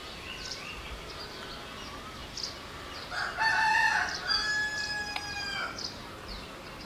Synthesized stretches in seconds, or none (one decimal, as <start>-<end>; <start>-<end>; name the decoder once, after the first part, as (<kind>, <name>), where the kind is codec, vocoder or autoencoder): 0.0-1.0 (vocoder, BigVGAN v2); 6.0-6.5